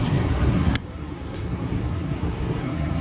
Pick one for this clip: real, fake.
fake